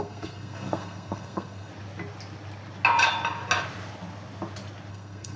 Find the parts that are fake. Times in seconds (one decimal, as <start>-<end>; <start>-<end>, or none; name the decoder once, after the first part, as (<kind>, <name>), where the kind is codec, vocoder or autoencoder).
0.0-1.7 (codec, SNAC); 4.9-5.4